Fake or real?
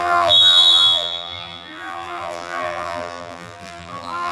fake